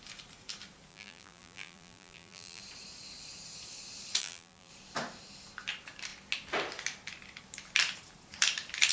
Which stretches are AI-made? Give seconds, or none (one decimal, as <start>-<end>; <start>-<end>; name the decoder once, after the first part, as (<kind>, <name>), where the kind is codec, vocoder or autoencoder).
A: 0.9-2.6 (vocoder, BigVGAN v2); 4.2-4.7